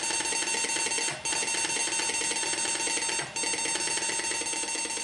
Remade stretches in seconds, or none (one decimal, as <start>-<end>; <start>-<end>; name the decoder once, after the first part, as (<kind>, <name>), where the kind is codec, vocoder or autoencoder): none